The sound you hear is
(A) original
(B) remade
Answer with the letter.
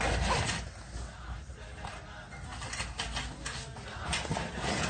A